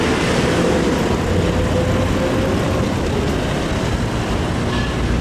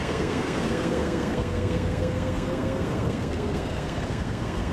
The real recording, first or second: first